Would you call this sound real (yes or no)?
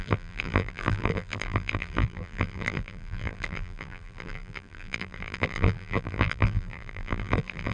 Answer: no